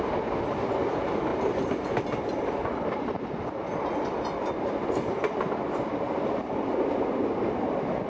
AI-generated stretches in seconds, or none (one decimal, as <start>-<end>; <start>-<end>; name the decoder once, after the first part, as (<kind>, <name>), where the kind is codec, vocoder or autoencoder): none